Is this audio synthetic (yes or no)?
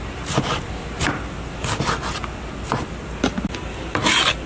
no